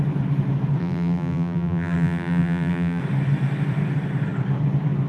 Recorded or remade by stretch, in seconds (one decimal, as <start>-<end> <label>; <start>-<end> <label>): 0.0-0.8 recorded; 0.8-3.0 remade; 3.0-5.1 recorded